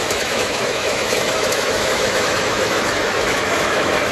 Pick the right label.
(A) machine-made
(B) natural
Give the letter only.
A